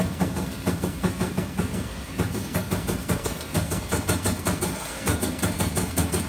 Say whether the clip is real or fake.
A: fake